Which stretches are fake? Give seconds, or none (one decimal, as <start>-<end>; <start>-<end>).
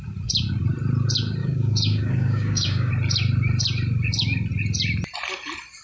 1.4-2.9